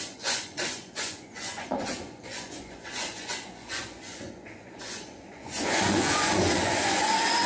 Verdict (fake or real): fake